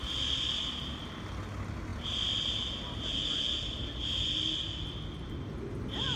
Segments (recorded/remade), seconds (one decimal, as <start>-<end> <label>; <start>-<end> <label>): 0.0-6.2 recorded